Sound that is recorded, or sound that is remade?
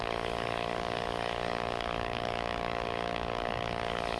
remade